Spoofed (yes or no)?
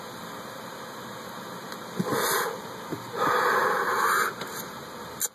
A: no